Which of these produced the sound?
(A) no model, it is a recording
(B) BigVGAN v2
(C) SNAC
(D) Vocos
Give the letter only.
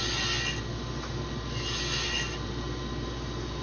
A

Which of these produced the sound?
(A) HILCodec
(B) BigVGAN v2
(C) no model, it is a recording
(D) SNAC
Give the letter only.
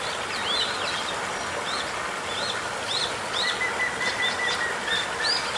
C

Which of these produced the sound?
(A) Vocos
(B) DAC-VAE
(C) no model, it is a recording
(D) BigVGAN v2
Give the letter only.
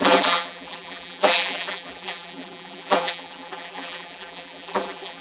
D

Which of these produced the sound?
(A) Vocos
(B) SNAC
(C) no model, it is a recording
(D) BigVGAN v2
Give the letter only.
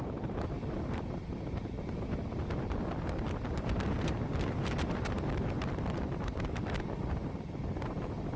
D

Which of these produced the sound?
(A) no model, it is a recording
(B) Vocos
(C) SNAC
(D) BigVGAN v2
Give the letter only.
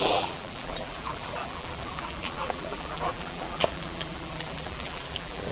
D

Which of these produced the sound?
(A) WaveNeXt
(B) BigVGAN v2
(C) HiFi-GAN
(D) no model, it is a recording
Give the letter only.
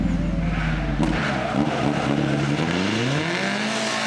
D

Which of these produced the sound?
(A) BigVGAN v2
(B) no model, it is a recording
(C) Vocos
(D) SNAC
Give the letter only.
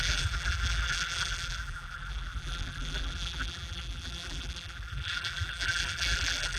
A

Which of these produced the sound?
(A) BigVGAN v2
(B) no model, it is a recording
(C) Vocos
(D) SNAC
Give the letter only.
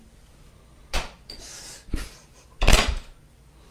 A